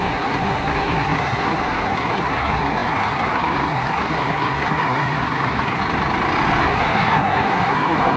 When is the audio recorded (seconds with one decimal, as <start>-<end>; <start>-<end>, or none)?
5.8-6.6